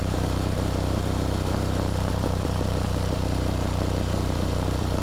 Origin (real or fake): fake